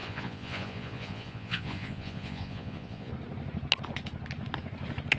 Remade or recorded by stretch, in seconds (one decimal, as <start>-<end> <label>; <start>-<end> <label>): 0.0-3.1 remade; 3.1-5.2 recorded